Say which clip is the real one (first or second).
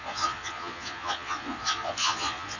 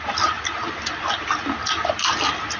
second